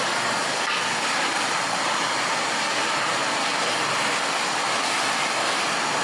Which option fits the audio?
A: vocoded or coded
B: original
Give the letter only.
B